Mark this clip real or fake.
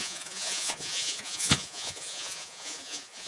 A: fake